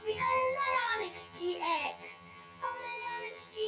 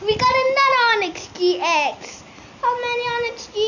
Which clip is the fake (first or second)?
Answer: first